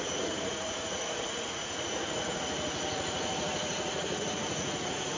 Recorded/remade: remade